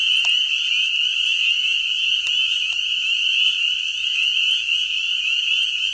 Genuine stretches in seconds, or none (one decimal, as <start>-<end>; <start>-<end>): 0.0-5.9